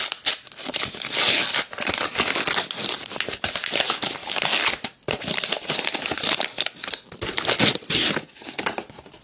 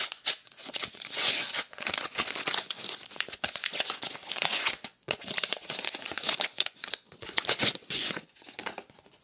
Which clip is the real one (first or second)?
first